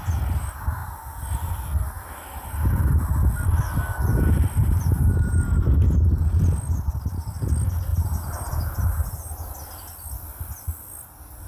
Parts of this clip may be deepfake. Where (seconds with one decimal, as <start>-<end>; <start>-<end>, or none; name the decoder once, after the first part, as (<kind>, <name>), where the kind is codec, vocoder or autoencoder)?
4.6-5.4 (vocoder, BigVGAN v2); 7.9-9.5